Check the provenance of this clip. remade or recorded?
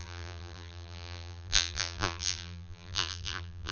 remade